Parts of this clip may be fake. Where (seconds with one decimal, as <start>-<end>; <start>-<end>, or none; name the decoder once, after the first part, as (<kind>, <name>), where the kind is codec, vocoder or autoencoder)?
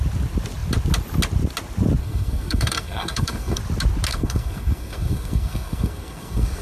2.0-3.6 (codec, SNAC); 4.1-6.6